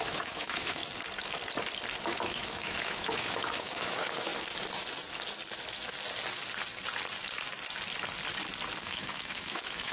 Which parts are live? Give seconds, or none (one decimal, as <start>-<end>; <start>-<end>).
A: 0.8-2.0; 4.3-8.8